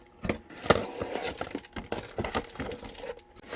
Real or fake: real